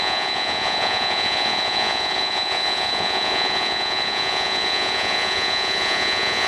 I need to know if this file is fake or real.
fake